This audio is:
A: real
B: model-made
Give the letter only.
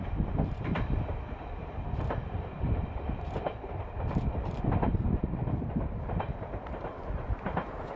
B